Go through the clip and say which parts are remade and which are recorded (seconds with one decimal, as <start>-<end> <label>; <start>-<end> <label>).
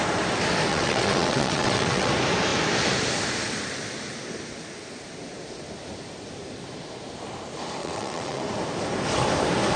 0.0-0.7 recorded; 0.7-2.1 remade; 2.1-7.8 recorded; 7.8-8.4 remade; 8.4-9.8 recorded